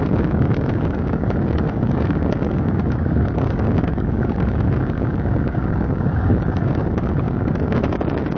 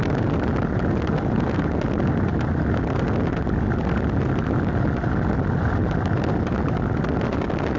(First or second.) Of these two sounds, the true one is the second